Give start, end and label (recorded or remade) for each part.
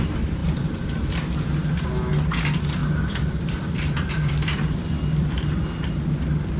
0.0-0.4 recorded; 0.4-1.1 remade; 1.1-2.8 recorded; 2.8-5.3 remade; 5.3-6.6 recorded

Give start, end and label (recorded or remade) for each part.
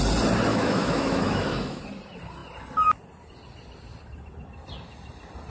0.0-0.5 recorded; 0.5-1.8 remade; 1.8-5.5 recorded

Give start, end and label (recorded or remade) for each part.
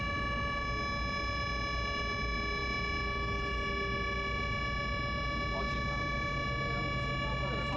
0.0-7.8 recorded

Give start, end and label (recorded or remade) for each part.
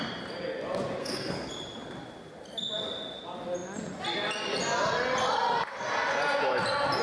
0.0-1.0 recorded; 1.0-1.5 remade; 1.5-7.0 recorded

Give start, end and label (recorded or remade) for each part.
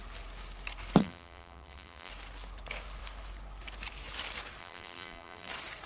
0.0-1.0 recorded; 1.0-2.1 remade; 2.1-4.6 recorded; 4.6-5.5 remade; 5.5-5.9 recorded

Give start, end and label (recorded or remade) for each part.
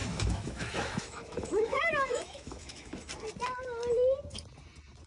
0.0-3.1 remade; 3.1-5.1 recorded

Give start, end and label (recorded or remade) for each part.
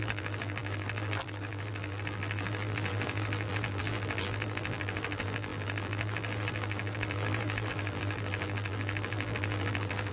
0.0-10.1 remade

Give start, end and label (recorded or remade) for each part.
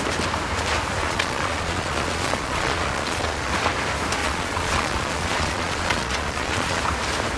0.0-1.0 recorded; 1.0-3.5 remade; 3.5-4.2 recorded; 4.2-6.8 remade; 6.8-7.4 recorded